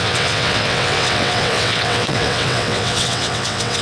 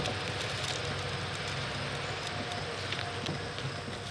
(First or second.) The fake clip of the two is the first